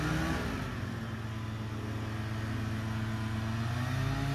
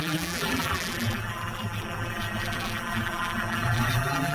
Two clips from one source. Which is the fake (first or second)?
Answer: second